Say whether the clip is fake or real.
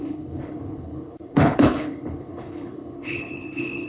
fake